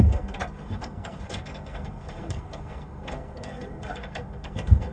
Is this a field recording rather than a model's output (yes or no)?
no